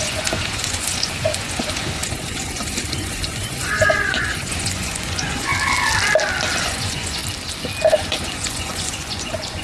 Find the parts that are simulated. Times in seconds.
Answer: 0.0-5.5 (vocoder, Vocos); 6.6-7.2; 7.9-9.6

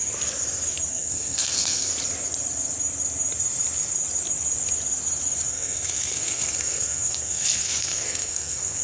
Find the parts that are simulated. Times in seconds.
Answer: 0.9-1.9 (codec, SNAC); 5.5-8.8

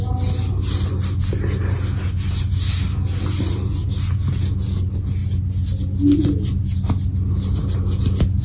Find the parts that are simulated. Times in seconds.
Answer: none

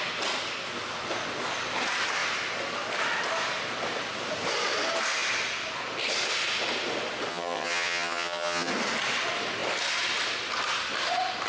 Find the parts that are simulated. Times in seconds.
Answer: 7.3-8.7 (vocoder, HiFi-GAN)

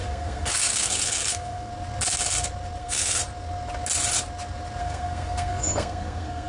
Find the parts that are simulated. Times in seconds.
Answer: 0.0-1.7 (codec, SNAC); 2.8-3.2; 4.8-6.5

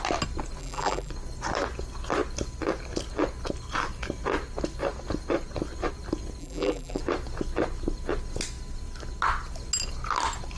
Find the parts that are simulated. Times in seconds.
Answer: 0.6-1.1 (vocoder, BigVGAN v2); 6.4-7.0